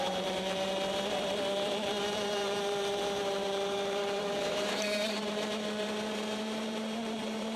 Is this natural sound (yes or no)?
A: no